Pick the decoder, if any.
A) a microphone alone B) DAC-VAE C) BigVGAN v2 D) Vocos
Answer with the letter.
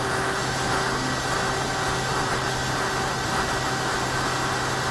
A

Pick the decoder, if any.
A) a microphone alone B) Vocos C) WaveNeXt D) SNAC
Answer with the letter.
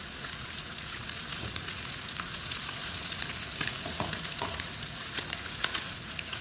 B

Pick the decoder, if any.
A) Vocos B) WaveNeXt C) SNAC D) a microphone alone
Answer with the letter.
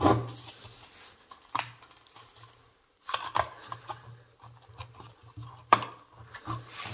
D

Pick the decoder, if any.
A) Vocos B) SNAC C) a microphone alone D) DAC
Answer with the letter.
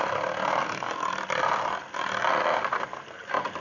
C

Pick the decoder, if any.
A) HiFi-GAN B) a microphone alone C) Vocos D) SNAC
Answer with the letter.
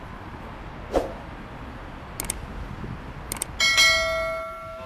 B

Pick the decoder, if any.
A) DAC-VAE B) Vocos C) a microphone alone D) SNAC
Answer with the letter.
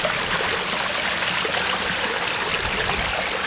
C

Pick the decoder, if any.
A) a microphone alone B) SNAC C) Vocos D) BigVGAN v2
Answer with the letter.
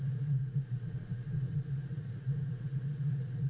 C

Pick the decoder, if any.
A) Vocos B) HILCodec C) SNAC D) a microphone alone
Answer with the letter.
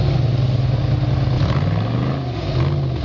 D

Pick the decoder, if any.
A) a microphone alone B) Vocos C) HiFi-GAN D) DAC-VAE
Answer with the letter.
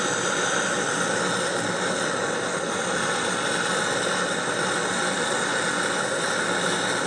A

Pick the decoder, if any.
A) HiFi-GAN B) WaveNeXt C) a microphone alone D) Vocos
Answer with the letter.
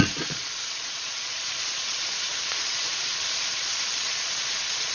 D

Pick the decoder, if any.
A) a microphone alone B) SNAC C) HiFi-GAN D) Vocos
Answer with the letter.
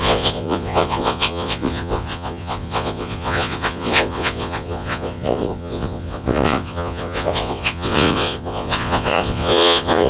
D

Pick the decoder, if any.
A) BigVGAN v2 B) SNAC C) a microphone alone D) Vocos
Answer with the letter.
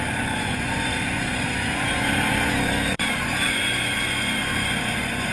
D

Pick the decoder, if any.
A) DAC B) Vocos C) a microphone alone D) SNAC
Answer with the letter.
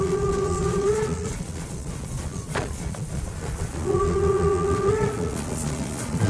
B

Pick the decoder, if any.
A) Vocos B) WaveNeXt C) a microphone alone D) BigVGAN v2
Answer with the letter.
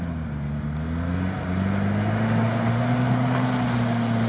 C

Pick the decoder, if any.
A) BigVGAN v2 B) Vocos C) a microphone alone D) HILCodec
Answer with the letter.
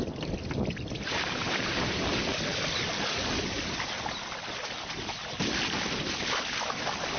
C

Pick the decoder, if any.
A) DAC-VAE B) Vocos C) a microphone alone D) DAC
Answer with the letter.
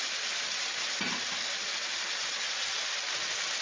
C